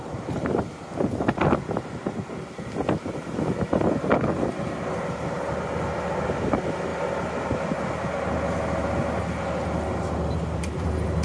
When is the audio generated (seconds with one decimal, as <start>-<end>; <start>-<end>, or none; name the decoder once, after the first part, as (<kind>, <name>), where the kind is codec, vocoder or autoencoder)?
none

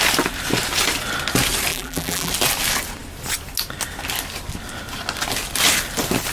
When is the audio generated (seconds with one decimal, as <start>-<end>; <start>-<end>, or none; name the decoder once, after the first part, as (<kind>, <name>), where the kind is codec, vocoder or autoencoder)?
1.7-2.3 (vocoder, BigVGAN v2)